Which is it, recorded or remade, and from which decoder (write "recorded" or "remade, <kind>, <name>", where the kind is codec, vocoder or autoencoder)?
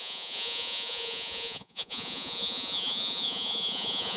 remade, vocoder, Vocos